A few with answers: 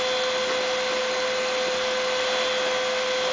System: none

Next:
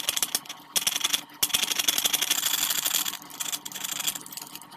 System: none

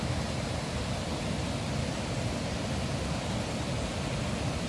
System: none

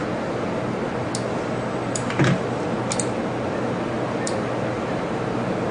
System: none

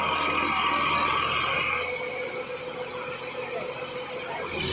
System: none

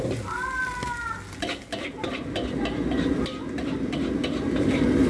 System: none